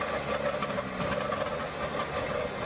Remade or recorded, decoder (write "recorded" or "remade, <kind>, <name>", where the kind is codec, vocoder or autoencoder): recorded